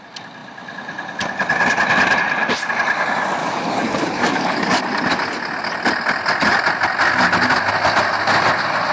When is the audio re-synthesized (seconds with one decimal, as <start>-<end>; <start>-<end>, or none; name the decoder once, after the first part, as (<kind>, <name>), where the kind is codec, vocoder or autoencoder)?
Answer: 3.4-4.8 (codec, DAC)